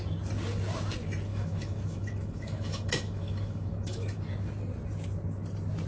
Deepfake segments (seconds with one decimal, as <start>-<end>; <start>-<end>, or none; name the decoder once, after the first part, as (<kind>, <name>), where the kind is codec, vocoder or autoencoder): 1.3-4.2 (autoencoder, DAC-VAE)